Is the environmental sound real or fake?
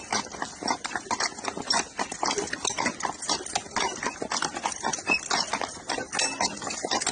real